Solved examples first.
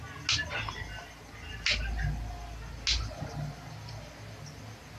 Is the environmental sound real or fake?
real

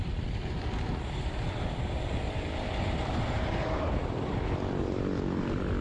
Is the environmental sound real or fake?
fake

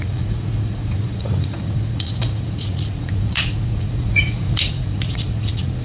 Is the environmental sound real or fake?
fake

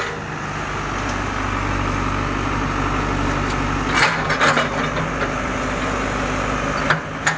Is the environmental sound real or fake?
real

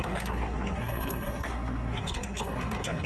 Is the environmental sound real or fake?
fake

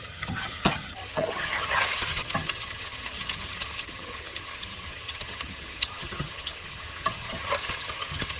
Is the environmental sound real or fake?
fake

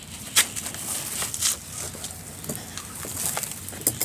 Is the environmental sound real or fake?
real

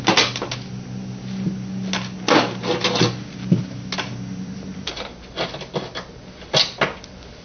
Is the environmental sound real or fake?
real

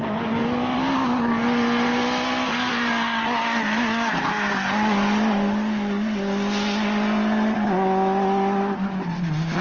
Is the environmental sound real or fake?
real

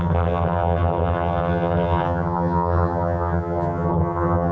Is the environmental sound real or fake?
fake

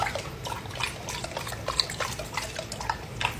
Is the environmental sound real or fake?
real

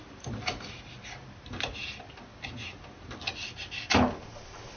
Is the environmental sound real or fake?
real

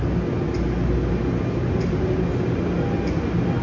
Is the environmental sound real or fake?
real